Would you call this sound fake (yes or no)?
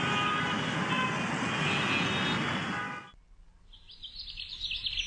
no